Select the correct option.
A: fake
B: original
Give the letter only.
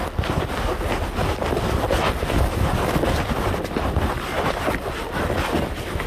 B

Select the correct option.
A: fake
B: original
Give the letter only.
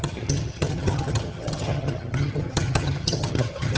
A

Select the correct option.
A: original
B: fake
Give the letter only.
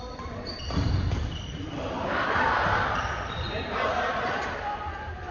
B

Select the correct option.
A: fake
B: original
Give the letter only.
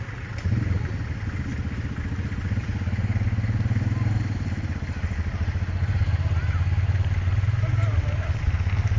B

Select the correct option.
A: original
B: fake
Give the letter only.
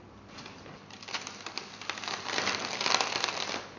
A